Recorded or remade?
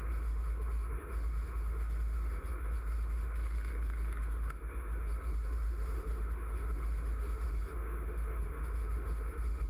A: remade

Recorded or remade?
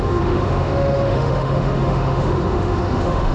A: remade